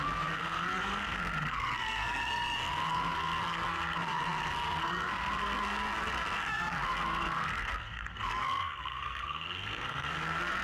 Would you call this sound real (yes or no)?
no